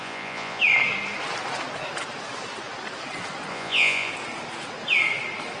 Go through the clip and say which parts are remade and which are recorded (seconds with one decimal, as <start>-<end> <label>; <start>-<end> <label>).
0.0-0.6 remade; 0.6-3.5 recorded; 3.5-4.1 remade; 4.1-5.6 recorded